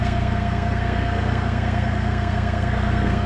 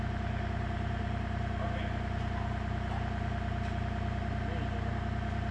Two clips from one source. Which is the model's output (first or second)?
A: first